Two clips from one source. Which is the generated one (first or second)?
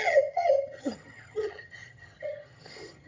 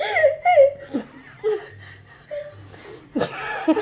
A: first